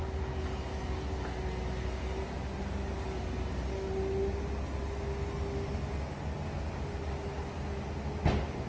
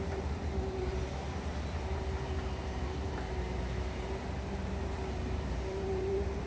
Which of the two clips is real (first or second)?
first